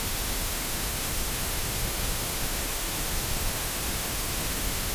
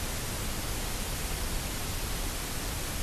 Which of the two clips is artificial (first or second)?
first